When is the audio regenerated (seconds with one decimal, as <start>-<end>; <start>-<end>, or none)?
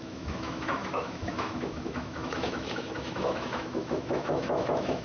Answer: 0.0-5.0